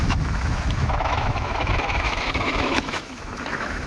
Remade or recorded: remade